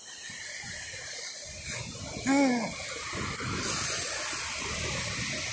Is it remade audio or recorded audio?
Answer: recorded